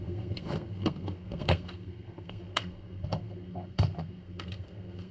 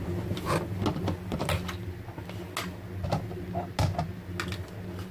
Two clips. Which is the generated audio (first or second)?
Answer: first